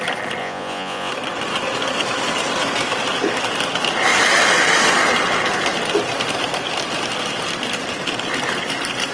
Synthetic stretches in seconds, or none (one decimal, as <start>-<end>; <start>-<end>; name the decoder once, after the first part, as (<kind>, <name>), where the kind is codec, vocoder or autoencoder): 0.4-1.1 (vocoder, Vocos)